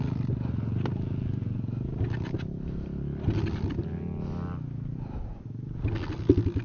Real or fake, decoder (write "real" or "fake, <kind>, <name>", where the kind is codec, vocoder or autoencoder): real